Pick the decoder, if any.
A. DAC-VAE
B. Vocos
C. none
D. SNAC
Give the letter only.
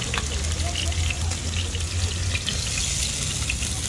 C